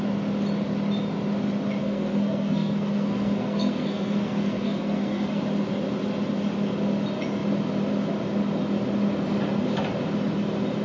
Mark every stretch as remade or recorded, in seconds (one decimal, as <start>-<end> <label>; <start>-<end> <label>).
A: 0.0-1.8 recorded; 1.8-5.4 remade; 5.4-10.8 recorded